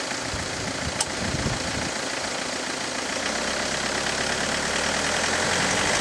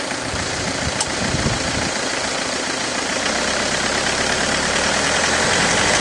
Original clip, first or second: first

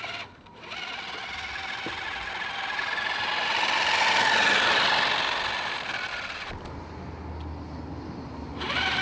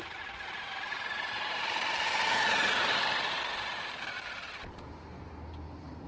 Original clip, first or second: first